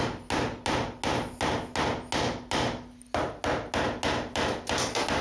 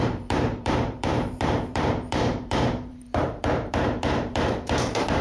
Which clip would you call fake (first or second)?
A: second